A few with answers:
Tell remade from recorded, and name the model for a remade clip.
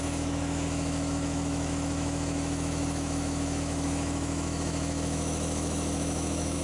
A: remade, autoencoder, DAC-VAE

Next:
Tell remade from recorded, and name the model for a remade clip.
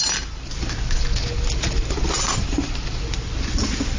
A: recorded